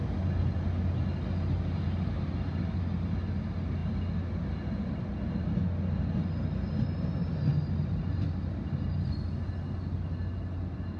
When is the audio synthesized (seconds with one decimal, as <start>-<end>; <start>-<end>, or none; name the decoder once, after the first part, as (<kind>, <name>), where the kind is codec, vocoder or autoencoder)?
none